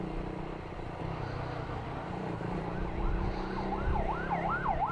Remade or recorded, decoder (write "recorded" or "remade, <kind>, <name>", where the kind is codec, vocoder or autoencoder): recorded